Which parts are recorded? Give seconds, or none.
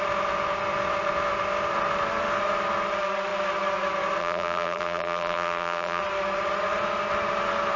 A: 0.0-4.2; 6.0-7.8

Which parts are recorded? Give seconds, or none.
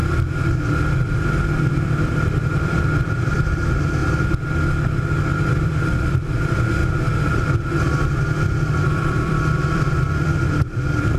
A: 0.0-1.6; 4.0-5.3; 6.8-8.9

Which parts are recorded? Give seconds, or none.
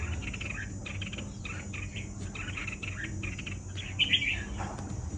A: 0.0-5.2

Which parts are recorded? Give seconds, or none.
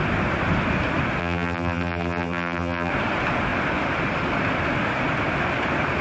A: 0.0-1.2; 2.9-6.0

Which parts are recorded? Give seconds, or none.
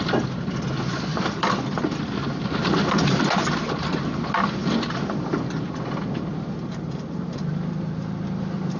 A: 0.0-1.1; 2.0-4.6; 6.0-8.8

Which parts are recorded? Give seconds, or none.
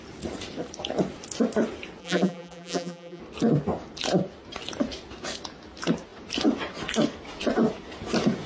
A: 0.0-2.0; 3.2-8.5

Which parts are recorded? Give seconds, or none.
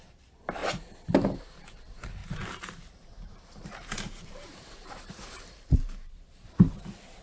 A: 0.0-2.2; 6.5-7.2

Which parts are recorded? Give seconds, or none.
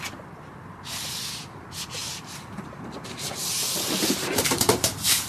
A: 0.0-2.0